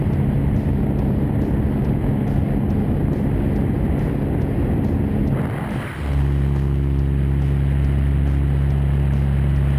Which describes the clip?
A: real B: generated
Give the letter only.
A